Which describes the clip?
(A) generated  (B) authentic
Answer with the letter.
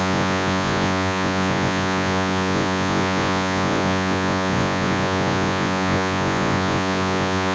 A